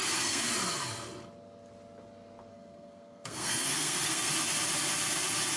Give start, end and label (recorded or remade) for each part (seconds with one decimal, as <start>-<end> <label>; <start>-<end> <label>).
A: 0.0-0.5 remade; 0.5-2.5 recorded; 2.5-4.3 remade; 4.3-5.6 recorded